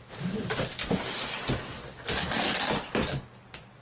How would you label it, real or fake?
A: real